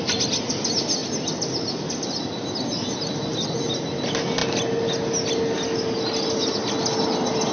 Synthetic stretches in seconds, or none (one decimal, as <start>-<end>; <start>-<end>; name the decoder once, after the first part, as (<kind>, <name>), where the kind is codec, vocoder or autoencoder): none